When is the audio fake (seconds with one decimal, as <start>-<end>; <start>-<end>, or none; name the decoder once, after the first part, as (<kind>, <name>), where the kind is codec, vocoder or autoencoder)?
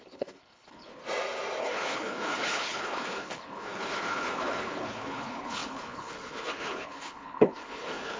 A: 0.0-1.0 (codec, HILCodec); 1.6-8.2